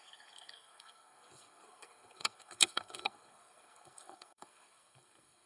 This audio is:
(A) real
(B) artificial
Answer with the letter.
B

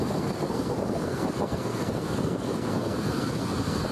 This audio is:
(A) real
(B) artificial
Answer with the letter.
B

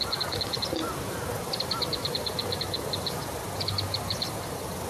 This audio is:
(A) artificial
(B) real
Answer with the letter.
B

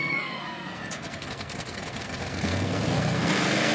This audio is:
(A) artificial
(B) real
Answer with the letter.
A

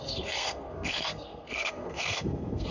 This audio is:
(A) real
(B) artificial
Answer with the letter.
B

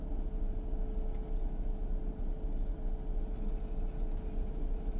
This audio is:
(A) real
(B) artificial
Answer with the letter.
A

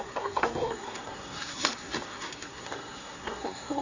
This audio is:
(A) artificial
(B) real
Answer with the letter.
A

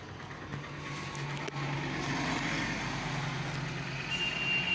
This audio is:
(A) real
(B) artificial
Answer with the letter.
A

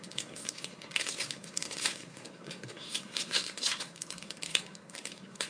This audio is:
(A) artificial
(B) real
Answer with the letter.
A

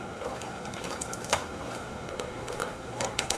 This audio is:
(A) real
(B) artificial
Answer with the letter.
B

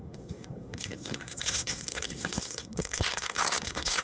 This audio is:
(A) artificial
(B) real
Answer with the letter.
A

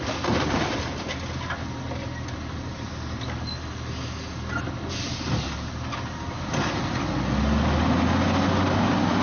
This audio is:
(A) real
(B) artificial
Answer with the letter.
A